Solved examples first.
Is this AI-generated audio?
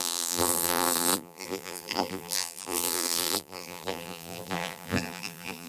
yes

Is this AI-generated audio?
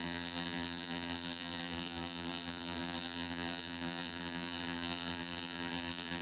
yes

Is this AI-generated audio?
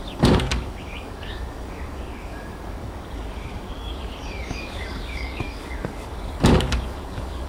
yes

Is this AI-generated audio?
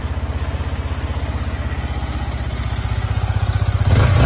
no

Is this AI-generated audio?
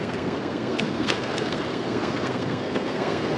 yes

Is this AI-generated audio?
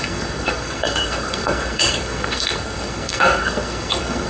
yes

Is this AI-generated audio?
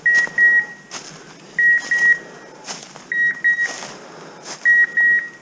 no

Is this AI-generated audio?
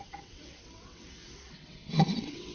yes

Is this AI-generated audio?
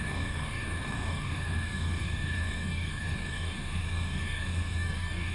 yes